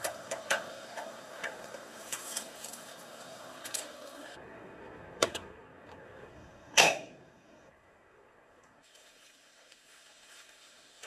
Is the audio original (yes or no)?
no